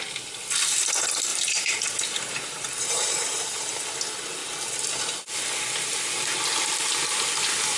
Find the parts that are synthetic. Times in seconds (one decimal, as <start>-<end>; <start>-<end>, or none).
1.3-3.8

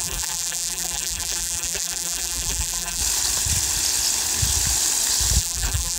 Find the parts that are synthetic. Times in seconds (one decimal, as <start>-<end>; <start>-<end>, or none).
0.0-3.0; 5.4-6.0

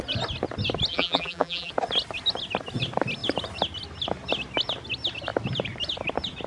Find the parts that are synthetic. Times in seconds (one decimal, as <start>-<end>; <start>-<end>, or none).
0.9-1.7

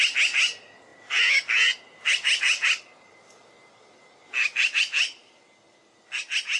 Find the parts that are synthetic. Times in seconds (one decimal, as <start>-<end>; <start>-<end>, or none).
none

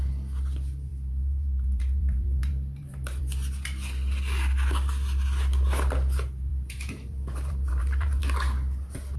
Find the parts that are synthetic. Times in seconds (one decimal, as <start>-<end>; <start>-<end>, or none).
0.9-3.2; 6.5-8.2

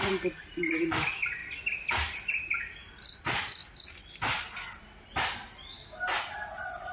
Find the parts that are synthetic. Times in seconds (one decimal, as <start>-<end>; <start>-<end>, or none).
none